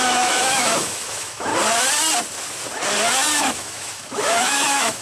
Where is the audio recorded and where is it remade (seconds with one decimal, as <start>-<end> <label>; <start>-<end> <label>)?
0.0-1.5 remade; 1.5-3.4 recorded; 3.4-5.0 remade